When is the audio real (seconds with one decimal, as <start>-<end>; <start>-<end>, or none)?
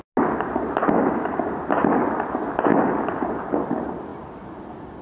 0.0-0.8; 1.6-5.0